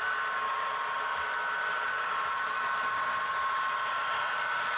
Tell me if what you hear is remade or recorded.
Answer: recorded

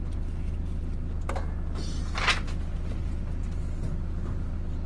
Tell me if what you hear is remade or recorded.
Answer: recorded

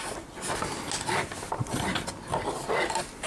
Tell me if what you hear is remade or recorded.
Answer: recorded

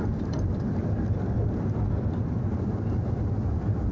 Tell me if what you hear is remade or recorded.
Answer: remade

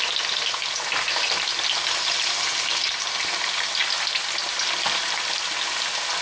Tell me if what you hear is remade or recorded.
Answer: recorded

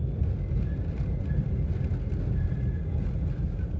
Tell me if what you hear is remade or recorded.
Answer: recorded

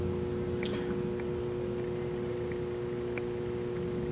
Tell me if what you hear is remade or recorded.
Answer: recorded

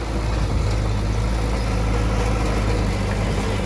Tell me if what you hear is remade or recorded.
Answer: recorded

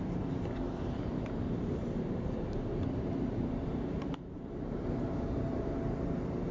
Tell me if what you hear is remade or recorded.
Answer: remade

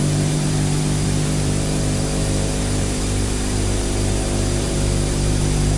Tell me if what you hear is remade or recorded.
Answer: remade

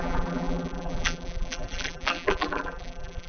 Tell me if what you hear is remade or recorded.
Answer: remade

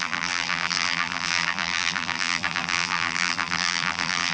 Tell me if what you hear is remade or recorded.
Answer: remade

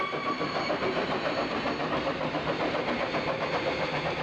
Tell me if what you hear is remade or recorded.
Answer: remade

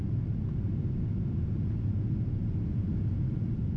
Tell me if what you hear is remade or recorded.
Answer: recorded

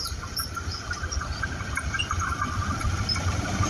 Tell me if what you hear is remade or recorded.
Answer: remade